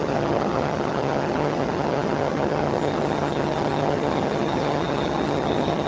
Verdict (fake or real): fake